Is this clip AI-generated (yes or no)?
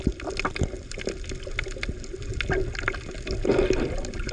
no